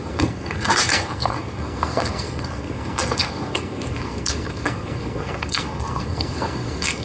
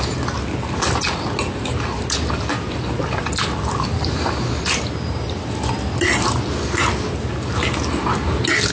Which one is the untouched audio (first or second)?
second